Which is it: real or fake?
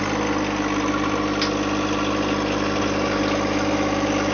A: real